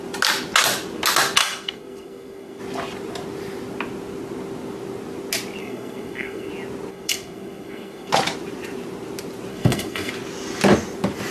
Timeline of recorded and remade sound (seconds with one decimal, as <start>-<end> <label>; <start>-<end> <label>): 0.0-1.4 recorded; 1.4-2.6 remade; 2.6-5.6 recorded; 5.6-6.5 remade; 6.5-6.9 recorded; 6.9-8.1 remade; 8.1-9.5 recorded; 9.5-10.1 remade; 10.1-11.3 recorded